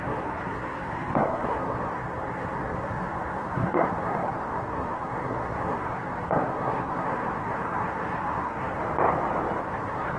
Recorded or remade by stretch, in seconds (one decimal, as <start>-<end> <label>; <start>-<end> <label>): 0.0-8.8 remade; 8.8-9.6 recorded; 9.6-10.2 remade